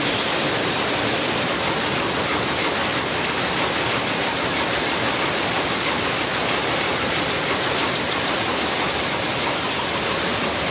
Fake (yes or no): no